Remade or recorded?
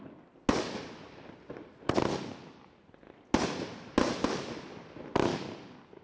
recorded